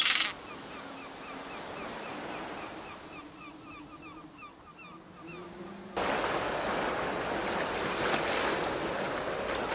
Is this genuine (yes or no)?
yes